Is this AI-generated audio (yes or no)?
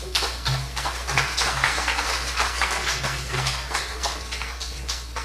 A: yes